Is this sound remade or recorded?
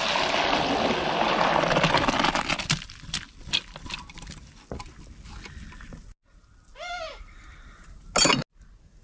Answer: recorded